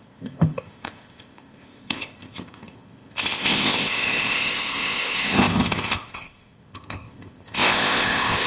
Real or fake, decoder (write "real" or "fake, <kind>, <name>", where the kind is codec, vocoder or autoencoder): fake, codec, ZipCodec